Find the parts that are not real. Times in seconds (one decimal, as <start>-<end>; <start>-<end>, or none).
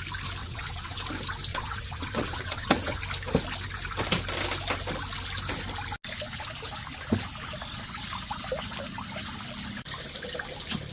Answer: 0.4-1.0; 1.5-3.0